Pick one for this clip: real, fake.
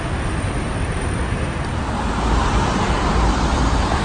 real